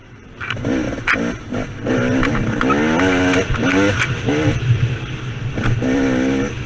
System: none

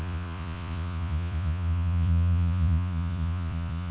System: vocoder, Vocos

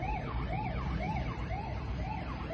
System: vocoder, BigVGAN v2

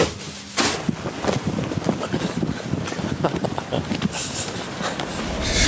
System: none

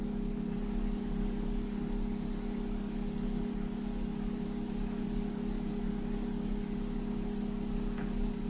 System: codec, DAC